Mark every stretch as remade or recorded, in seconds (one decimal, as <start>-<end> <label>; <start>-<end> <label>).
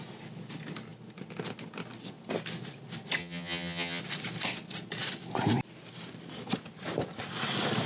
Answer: 0.0-3.2 recorded; 3.2-4.0 remade; 4.0-7.9 recorded